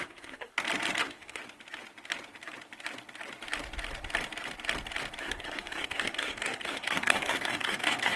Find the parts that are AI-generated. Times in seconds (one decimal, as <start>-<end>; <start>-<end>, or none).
0.0-0.5; 1.0-1.4; 5.2-8.2